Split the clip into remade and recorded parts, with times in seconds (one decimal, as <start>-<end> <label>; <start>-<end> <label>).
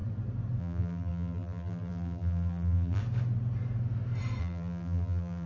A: 0.0-0.6 recorded; 0.6-3.0 remade; 3.0-4.4 recorded; 4.4-5.5 remade